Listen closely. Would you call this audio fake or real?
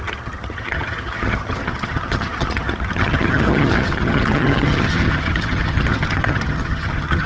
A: fake